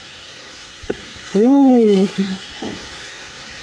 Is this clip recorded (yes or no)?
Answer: no